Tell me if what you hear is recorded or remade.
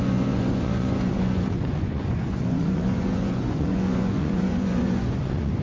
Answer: remade